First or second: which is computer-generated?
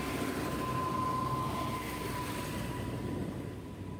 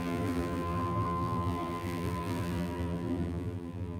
second